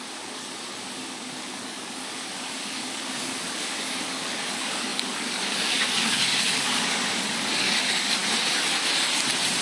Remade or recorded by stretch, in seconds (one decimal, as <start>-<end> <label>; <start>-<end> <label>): 0.0-8.2 remade; 8.2-9.6 recorded